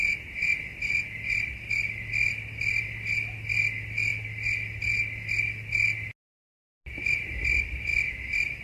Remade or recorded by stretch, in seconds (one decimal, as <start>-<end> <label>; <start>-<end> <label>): 0.0-8.6 recorded